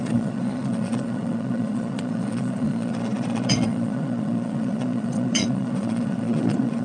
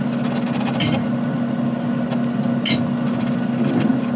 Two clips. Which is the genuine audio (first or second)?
second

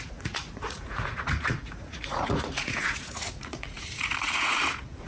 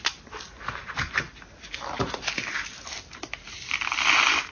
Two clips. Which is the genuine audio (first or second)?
second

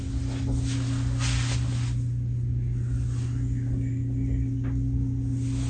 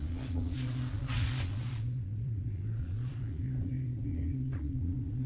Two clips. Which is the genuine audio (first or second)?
first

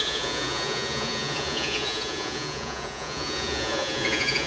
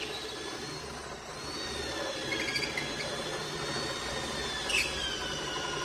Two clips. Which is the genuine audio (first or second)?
second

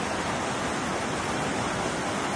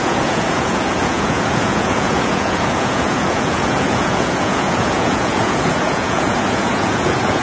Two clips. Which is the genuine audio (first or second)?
first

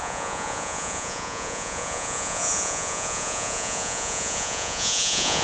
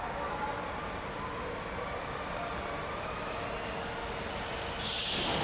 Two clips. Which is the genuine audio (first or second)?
second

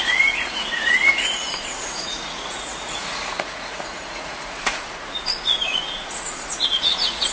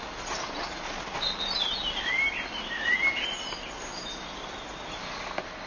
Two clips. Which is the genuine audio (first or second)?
second